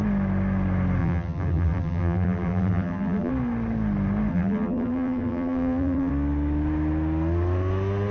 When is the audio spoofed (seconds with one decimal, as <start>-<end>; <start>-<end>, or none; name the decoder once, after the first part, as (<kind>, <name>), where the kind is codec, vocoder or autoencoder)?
1.0-3.3 (vocoder, BigVGAN v2); 4.3-6.1